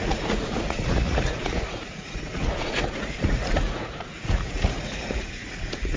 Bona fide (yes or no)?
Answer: no